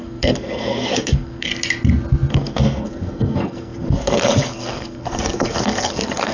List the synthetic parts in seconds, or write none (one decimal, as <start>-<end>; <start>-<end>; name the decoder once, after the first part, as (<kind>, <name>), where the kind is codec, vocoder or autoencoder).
0.0-1.5 (codec, SNAC); 2.3-6.3